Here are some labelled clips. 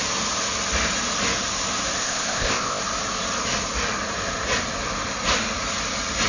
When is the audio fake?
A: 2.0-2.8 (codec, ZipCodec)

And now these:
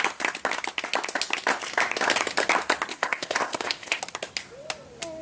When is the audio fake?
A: 2.9-4.0 (codec, ZipCodec)

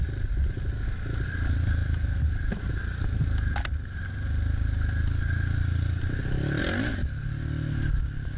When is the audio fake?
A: none

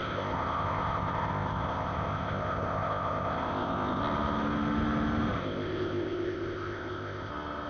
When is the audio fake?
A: 0.0-4.0 (codec, ZipCodec); 5.4-7.3

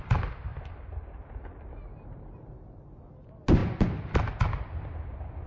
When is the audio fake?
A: none

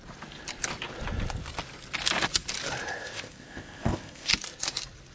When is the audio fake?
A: 2.9-4.3 (codec, ZipCodec)

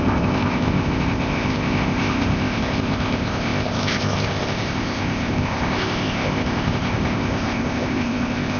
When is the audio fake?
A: 0.0-8.6 (codec, ZipCodec)

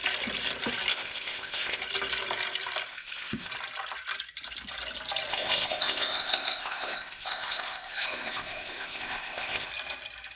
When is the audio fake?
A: 0.9-1.8 (codec, ZipCodec); 2.9-3.5; 5.3-9.7